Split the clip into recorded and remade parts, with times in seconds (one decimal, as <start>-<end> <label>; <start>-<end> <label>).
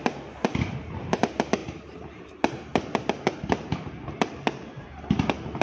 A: 0.0-5.6 recorded